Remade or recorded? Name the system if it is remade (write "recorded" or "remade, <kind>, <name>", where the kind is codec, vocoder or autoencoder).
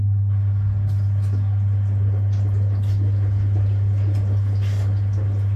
recorded